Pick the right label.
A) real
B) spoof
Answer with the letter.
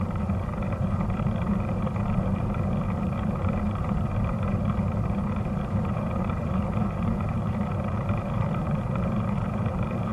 B